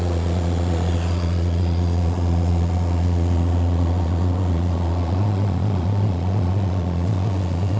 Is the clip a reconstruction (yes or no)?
yes